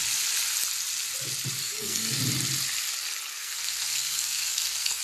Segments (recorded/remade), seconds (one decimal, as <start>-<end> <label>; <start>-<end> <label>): 0.0-1.6 recorded; 1.6-2.2 remade; 2.2-3.3 recorded; 3.3-5.0 remade